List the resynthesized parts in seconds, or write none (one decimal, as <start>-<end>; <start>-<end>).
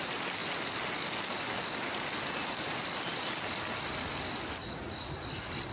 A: 4.6-5.3